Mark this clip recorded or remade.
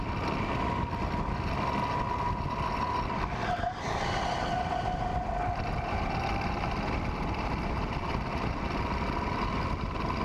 recorded